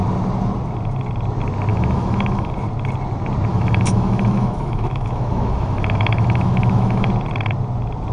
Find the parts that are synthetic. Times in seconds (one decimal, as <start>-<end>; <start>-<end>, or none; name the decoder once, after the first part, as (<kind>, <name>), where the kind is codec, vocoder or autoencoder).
1.7-2.5 (autoencoder, DAC-VAE); 3.5-7.1